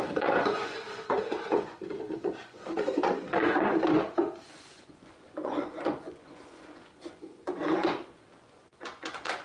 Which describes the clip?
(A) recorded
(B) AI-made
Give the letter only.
B